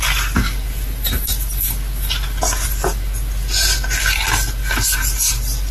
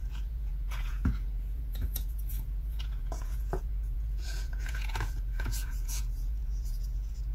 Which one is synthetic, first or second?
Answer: second